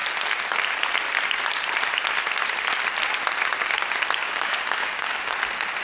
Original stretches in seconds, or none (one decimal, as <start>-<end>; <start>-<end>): 0.0-4.2; 5.3-5.8